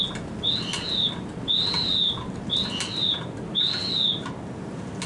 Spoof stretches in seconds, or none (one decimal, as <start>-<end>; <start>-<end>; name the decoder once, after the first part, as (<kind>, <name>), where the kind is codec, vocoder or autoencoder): none